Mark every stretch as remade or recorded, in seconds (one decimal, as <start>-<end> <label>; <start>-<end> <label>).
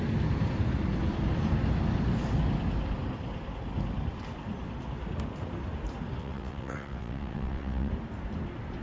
0.0-6.2 recorded; 6.2-7.9 remade; 7.9-8.8 recorded